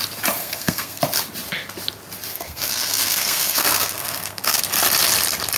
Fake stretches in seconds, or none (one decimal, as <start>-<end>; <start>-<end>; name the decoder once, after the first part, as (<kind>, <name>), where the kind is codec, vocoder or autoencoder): 0.4-1.0 (codec, SNAC); 2.3-4.6